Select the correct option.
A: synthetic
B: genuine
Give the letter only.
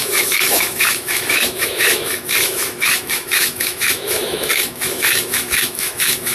A